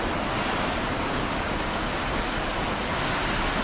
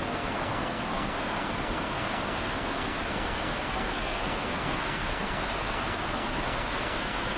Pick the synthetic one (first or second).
second